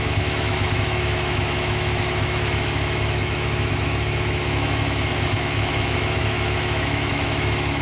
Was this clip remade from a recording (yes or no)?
yes